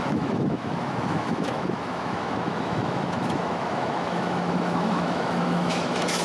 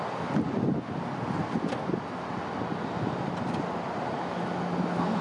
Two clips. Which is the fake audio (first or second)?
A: first